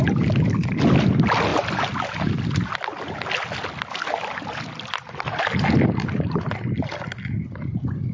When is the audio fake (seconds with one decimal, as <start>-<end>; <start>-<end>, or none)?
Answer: none